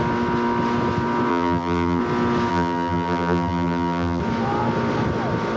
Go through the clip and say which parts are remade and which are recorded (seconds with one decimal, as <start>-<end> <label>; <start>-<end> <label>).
0.0-1.3 recorded; 1.3-2.0 remade; 2.0-2.5 recorded; 2.5-4.2 remade; 4.2-5.6 recorded